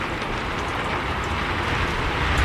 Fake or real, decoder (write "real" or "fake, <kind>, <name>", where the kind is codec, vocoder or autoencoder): fake, vocoder, BigVGAN v2